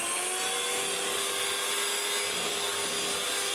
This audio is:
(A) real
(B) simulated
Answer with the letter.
A